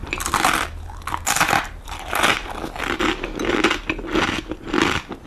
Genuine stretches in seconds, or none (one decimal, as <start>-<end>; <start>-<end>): 0.0-5.3